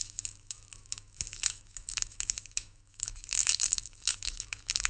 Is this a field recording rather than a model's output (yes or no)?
no